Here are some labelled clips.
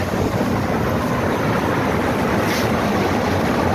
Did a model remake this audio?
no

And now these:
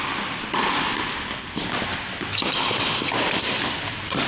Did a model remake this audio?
yes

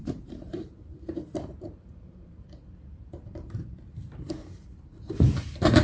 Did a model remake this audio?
yes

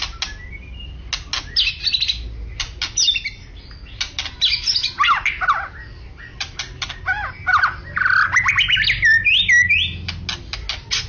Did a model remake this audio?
no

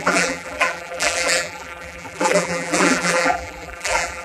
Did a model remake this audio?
yes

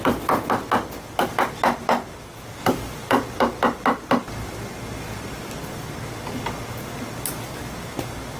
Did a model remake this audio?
no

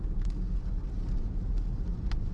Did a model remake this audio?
no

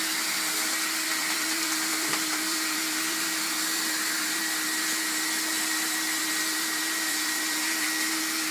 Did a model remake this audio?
yes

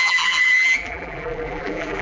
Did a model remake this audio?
yes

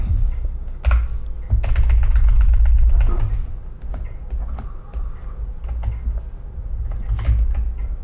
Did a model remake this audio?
no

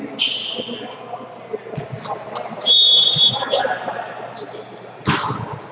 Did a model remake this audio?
no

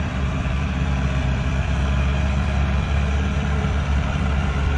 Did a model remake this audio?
yes